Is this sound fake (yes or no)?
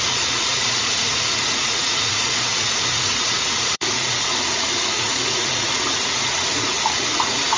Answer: yes